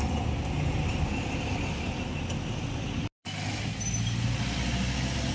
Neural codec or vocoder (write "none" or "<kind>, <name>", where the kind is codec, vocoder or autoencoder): none